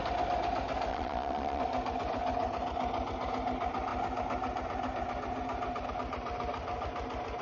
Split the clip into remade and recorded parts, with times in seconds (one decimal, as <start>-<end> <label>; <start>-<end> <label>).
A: 0.0-0.9 recorded; 0.9-1.6 remade; 1.6-7.4 recorded